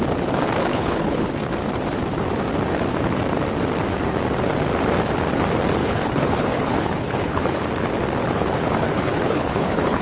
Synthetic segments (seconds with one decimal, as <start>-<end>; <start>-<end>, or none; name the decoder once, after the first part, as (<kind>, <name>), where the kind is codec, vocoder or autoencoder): 0.7-1.3 (codec, HILCodec); 5.8-7.6; 8.2-10.0